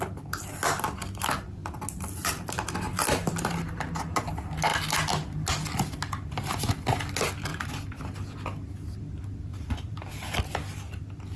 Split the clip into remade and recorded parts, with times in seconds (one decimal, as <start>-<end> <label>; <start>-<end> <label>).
0.0-1.6 recorded; 1.6-2.7 remade; 2.7-7.5 recorded; 7.5-8.0 remade; 8.0-9.5 recorded; 9.5-10.4 remade; 10.4-11.4 recorded